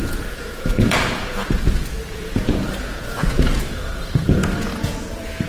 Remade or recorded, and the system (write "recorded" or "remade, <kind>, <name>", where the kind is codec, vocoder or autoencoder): remade, vocoder, Vocos